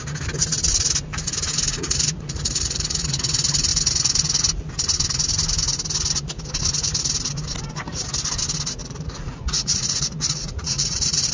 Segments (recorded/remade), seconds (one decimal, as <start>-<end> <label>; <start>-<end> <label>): 0.0-1.7 recorded; 1.7-3.1 remade; 3.1-8.8 recorded; 8.8-11.3 remade